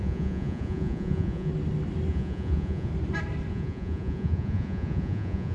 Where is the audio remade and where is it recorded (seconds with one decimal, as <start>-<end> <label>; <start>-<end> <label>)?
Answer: 0.0-1.5 remade; 1.5-2.1 recorded; 2.1-2.9 remade; 2.9-3.5 recorded; 3.5-5.5 remade